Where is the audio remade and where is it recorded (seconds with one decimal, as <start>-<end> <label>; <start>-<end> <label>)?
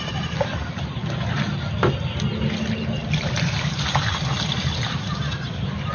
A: 0.0-3.0 recorded; 3.0-5.9 remade